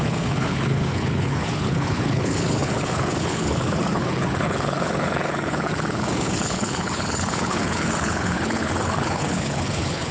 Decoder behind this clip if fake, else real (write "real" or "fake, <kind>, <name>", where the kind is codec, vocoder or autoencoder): fake, codec, HILCodec